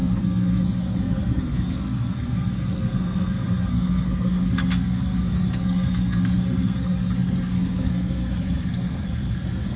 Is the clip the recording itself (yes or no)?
no